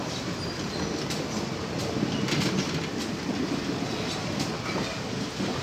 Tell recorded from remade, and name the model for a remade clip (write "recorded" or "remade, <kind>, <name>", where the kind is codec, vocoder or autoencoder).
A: recorded